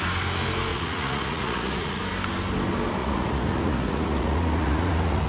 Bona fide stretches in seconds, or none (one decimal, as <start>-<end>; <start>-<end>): 0.0-0.7; 2.0-3.0